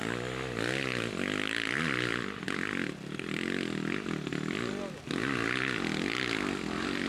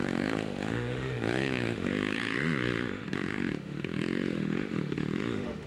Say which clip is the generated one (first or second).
second